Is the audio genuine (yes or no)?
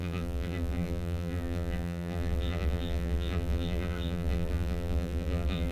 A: no